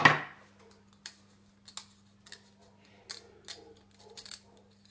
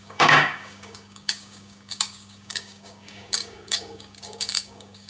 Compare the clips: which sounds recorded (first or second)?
first